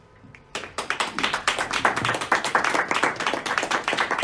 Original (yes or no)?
no